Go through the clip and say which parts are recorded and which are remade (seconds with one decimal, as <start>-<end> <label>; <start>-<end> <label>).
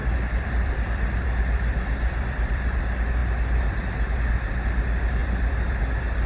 0.0-2.8 remade; 2.8-5.2 recorded; 5.2-5.8 remade; 5.8-6.3 recorded